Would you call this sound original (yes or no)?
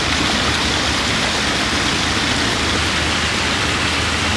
yes